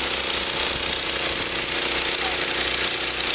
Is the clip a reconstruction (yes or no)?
no